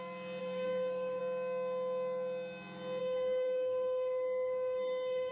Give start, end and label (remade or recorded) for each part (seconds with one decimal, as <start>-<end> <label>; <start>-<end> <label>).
0.0-0.4 recorded; 0.4-1.2 remade; 1.2-3.0 recorded; 3.0-5.3 remade